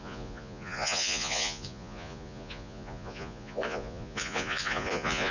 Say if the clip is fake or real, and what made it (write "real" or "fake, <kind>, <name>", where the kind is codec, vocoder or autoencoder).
fake, vocoder, Vocos